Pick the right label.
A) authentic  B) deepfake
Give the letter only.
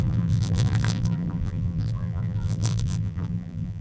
B